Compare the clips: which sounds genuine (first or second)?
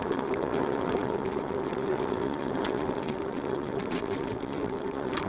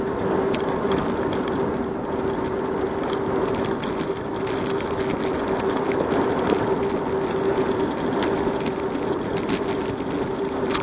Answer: second